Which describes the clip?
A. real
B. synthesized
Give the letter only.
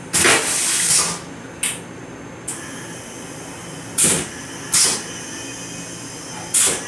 A